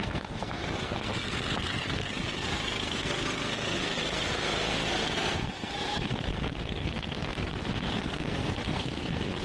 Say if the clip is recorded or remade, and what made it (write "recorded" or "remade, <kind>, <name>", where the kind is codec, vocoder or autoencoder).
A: remade, codec, SNAC